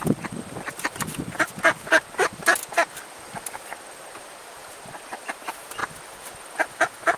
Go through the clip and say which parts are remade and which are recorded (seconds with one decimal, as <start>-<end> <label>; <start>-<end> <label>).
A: 0.0-4.6 recorded; 4.6-5.2 remade; 5.2-7.2 recorded